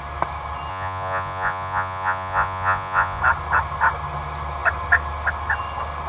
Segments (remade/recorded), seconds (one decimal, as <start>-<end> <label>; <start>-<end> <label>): 0.0-0.7 recorded; 0.7-3.2 remade; 3.2-6.1 recorded